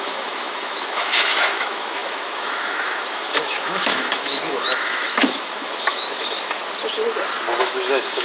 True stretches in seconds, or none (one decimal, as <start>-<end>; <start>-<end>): 6.6-7.6